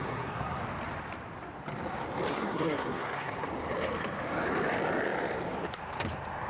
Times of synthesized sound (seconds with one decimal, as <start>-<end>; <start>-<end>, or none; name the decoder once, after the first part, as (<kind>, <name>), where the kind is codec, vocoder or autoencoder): 0.0-0.6 (codec, SNAC); 2.3-3.5